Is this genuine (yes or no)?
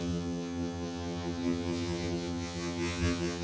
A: no